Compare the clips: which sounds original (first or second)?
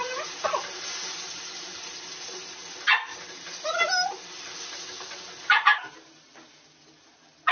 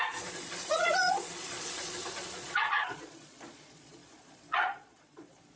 first